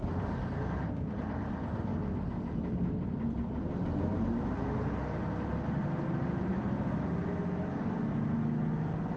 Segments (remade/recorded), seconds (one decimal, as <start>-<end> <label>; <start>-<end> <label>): 0.0-9.2 recorded

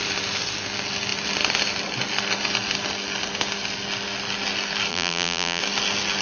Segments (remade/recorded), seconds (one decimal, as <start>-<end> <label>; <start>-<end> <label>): 0.0-4.9 recorded; 4.9-5.6 remade; 5.6-6.2 recorded

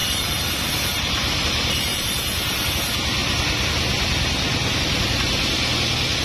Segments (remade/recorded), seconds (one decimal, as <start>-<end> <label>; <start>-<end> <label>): 0.0-2.7 remade; 2.7-6.2 recorded